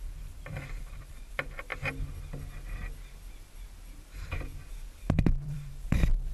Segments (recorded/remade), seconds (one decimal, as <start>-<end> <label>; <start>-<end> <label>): 0.0-1.7 remade; 1.7-5.0 recorded; 5.0-6.3 remade